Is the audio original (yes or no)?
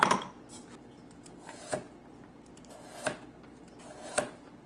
yes